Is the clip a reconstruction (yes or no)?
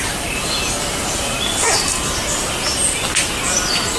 no